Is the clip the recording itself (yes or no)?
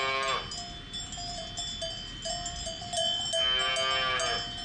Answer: yes